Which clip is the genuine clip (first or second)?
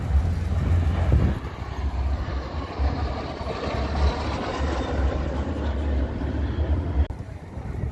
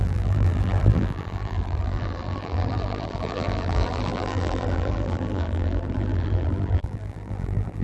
first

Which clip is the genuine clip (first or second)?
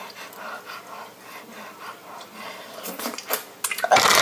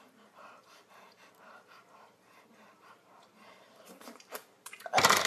first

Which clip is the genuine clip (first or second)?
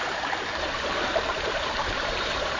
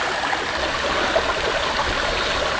second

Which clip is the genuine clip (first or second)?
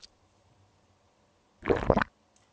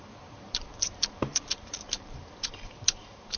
first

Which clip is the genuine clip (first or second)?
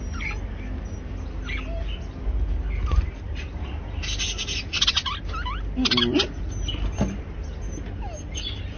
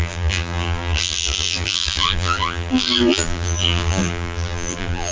first